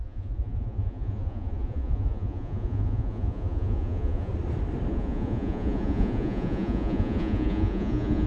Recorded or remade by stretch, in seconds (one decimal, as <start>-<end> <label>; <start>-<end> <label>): 0.0-4.3 remade; 4.3-4.9 recorded; 4.9-8.3 remade